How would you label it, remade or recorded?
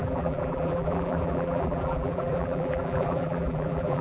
remade